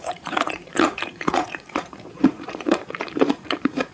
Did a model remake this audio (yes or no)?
yes